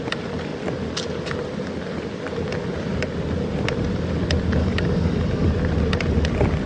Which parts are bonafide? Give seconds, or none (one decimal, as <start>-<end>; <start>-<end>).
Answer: 0.0-4.6; 5.5-6.7